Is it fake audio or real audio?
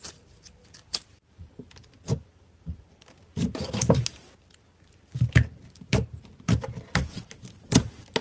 real